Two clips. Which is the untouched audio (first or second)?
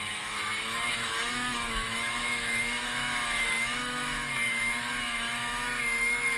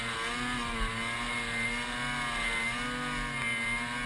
second